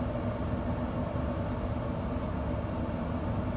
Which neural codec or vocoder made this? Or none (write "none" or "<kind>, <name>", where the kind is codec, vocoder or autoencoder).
none